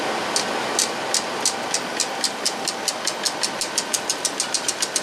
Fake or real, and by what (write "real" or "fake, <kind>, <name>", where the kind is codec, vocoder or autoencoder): real